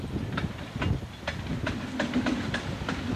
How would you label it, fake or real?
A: real